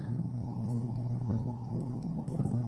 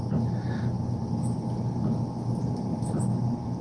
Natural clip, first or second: second